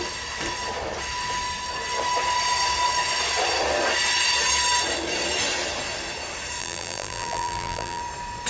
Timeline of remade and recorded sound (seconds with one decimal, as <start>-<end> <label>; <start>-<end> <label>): 0.0-6.6 recorded; 6.6-8.0 remade; 8.0-8.5 recorded